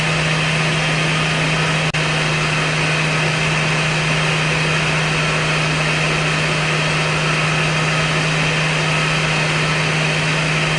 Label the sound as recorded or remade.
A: recorded